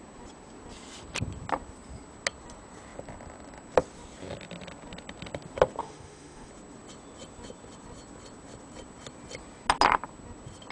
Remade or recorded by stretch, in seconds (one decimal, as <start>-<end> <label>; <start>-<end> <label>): 0.0-5.8 recorded; 5.8-6.5 remade; 6.5-10.7 recorded